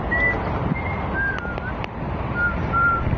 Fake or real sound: real